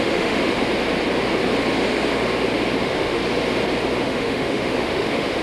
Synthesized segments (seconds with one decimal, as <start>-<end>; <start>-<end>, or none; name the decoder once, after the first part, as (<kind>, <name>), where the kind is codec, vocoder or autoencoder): 0.0-0.6 (autoencoder, DAC-VAE); 2.8-3.2; 4.0-5.4